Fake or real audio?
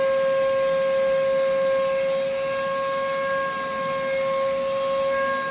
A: real